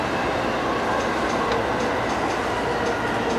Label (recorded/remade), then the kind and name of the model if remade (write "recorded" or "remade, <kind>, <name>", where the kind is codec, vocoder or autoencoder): recorded